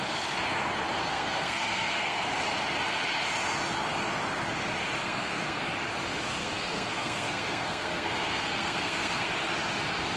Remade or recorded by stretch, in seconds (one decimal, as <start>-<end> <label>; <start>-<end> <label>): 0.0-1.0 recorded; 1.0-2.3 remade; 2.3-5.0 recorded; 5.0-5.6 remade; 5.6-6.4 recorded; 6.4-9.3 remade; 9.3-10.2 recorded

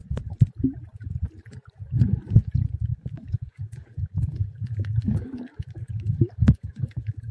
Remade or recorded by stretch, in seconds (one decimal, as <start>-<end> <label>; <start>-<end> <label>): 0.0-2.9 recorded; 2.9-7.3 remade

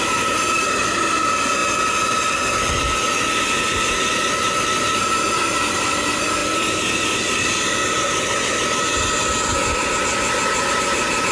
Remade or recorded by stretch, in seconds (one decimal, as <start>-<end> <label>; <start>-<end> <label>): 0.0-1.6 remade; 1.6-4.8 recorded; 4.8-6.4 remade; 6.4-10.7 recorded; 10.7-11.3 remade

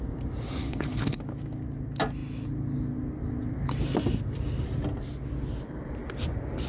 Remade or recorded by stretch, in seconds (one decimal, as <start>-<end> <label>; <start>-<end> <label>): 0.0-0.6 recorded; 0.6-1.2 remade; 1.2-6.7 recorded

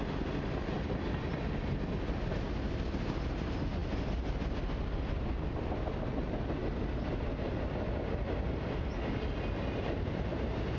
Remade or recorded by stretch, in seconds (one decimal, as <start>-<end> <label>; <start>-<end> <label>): 0.0-10.8 recorded

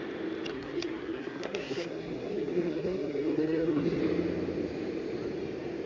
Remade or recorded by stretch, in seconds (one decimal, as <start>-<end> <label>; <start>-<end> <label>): 0.0-0.5 recorded; 0.5-4.0 remade; 4.0-5.9 recorded